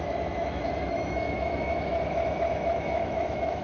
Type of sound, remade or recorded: remade